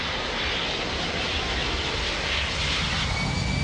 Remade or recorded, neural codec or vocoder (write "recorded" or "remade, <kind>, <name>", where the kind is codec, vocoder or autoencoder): recorded